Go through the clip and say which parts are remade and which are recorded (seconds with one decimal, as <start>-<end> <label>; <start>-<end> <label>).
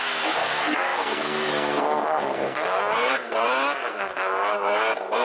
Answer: 0.0-5.2 remade